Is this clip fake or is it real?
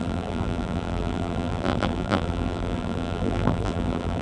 fake